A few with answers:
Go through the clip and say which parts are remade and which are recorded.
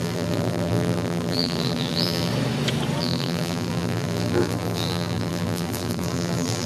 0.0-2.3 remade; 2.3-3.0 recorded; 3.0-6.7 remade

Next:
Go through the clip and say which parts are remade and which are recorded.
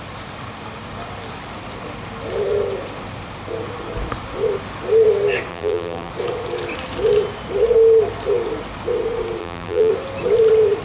0.0-5.5 recorded; 5.5-6.1 remade; 6.1-9.4 recorded; 9.4-9.9 remade; 9.9-10.8 recorded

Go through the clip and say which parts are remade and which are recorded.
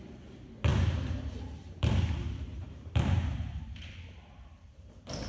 0.0-0.7 recorded; 0.7-1.9 remade; 1.9-2.5 recorded; 2.5-3.9 remade; 3.9-5.3 recorded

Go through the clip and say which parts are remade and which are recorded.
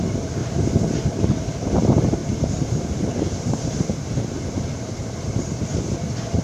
0.0-0.4 remade; 0.4-1.2 recorded; 1.2-6.4 remade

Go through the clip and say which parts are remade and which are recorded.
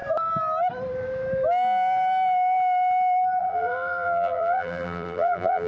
0.0-3.4 recorded; 3.4-5.7 remade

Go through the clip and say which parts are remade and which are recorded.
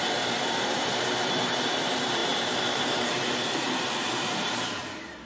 0.0-5.3 remade